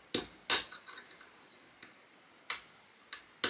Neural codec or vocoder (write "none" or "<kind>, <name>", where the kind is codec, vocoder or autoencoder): none